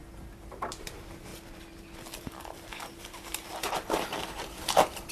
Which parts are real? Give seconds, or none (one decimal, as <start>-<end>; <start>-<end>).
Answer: 1.3-2.2